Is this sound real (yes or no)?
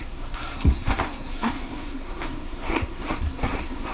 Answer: no